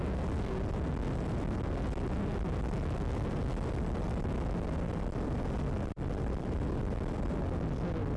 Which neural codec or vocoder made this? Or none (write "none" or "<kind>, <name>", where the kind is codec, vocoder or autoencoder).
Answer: none